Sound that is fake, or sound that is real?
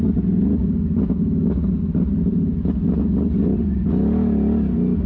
real